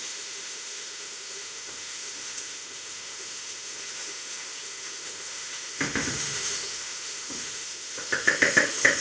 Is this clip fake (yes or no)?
yes